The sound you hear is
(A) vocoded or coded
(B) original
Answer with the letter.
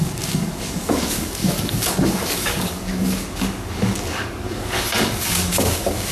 A